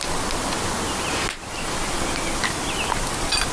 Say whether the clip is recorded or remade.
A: recorded